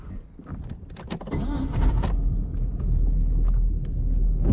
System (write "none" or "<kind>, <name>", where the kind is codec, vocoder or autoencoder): none